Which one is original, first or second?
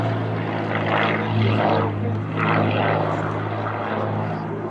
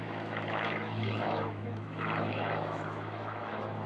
first